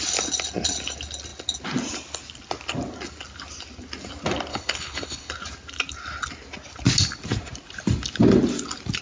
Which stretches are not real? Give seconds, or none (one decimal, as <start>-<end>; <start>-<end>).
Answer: 4.5-5.3